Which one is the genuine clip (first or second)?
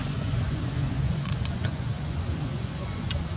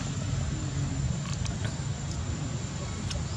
second